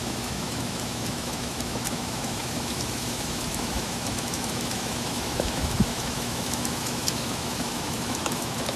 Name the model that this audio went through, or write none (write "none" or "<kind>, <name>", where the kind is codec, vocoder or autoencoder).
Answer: autoencoder, DAC-VAE